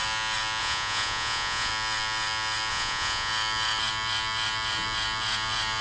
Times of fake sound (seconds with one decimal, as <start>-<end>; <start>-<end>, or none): 0.6-1.7; 2.7-3.3